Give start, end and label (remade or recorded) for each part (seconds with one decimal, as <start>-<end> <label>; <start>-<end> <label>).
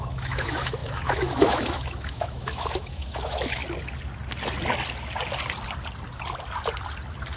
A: 0.0-3.6 remade; 3.6-7.4 recorded